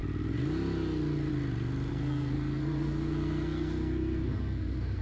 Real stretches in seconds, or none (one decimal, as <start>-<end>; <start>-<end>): 0.0-1.9